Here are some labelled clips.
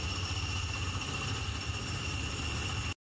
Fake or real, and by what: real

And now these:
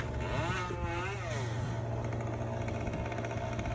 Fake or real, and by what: real